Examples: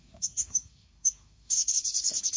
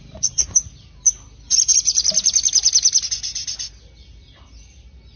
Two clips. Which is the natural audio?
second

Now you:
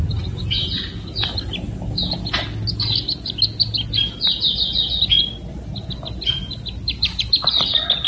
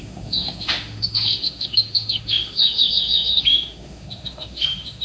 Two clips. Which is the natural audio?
first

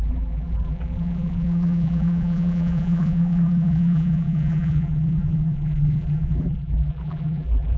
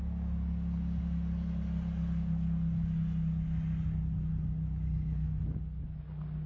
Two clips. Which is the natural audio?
second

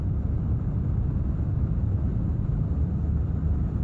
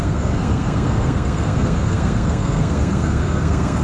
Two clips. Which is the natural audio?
first